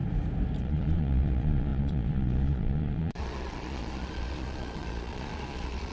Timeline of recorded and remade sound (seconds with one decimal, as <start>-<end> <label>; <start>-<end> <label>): 0.0-0.6 recorded; 0.6-5.9 remade

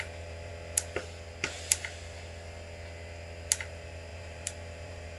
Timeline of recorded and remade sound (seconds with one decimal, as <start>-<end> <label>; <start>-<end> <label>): 0.0-0.5 remade; 0.5-3.6 recorded; 3.6-5.2 remade

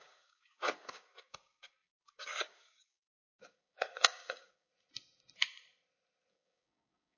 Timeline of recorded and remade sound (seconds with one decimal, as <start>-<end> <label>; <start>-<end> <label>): 0.0-4.7 remade; 4.7-6.3 recorded; 6.3-7.2 remade

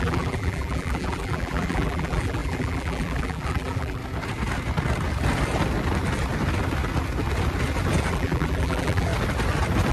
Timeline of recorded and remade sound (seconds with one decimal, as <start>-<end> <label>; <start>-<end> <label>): 0.0-4.0 remade; 4.0-8.1 recorded; 8.1-9.1 remade; 9.1-9.9 recorded

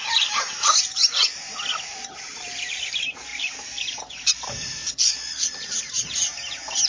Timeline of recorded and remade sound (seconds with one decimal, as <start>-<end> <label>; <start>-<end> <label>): 0.0-1.3 remade; 1.3-2.1 recorded; 2.1-4.8 remade; 4.8-6.1 recorded; 6.1-6.9 remade

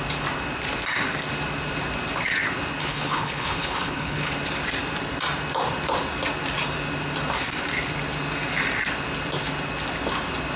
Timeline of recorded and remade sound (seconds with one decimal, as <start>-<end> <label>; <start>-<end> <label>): 0.0-2.8 recorded; 2.8-4.3 remade; 4.3-10.6 recorded